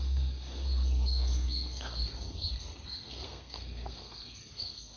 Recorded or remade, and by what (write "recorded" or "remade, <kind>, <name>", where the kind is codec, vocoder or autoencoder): remade, codec, SNAC